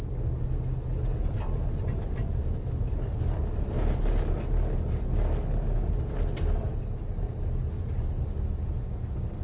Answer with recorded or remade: recorded